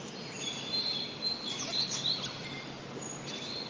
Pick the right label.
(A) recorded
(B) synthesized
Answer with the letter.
A